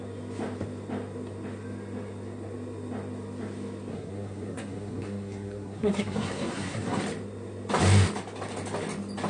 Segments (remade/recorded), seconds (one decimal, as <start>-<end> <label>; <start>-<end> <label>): 0.0-3.9 recorded; 3.9-7.0 remade; 7.0-9.3 recorded